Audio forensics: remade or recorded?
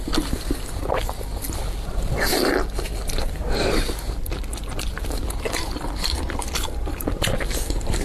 remade